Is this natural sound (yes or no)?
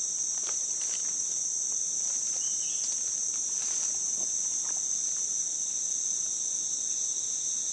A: yes